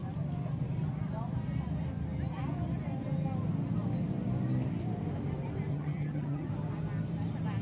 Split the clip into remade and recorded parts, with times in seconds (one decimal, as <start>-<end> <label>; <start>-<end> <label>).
0.0-5.7 recorded; 5.7-6.5 remade; 6.5-7.6 recorded